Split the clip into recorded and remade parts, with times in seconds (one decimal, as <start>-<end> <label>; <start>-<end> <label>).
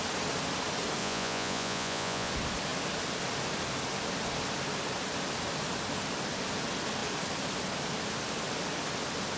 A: 0.0-1.0 recorded; 1.0-2.3 remade; 2.3-9.4 recorded